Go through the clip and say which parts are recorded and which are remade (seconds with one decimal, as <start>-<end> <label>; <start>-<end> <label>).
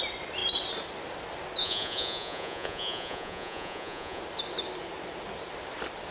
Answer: 0.0-1.6 recorded; 1.6-4.2 remade; 4.2-6.1 recorded